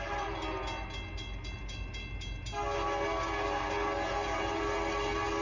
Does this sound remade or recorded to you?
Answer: recorded